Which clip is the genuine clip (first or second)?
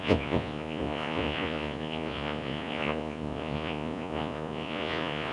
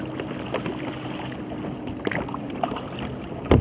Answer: second